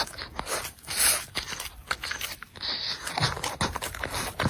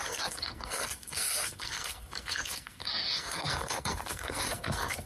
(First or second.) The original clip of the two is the first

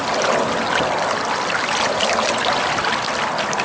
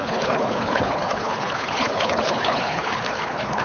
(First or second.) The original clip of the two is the first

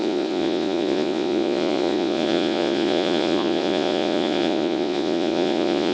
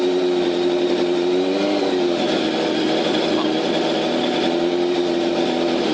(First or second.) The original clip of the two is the second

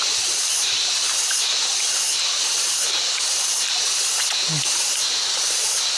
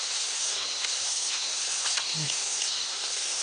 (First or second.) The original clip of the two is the first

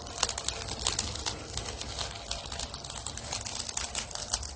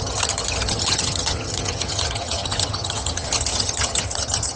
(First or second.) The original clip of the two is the first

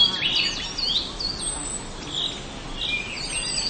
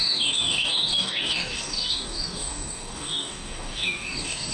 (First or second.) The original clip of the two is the first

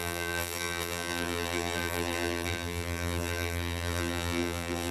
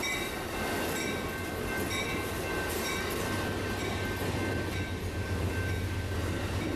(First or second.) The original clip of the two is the second